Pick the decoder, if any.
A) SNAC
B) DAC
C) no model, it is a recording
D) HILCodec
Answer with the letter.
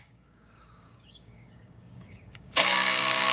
B